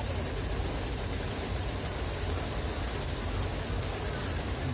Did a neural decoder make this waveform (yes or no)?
no